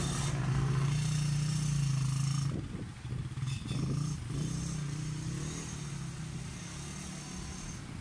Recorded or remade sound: recorded